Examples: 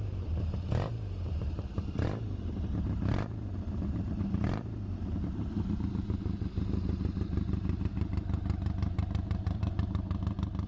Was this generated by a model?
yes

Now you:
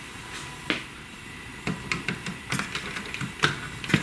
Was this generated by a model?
no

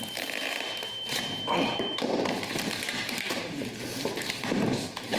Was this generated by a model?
yes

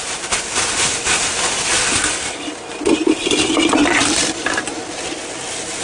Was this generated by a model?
yes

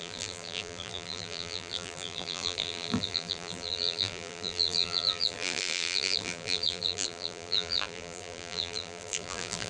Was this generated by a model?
yes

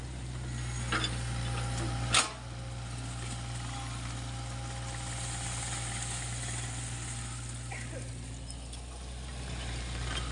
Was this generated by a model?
no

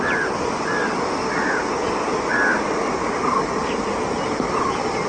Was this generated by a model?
no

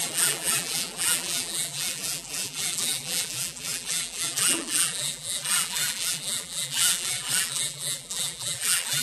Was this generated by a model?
yes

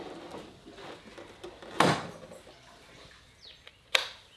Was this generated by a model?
no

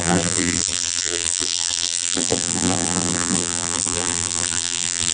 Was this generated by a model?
yes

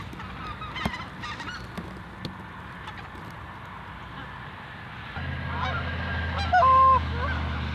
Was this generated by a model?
no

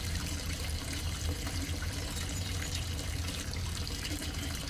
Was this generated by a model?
yes